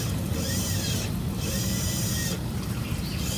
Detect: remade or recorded recorded